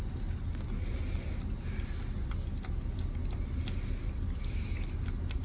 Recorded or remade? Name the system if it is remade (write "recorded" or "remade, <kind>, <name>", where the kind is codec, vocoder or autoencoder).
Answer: recorded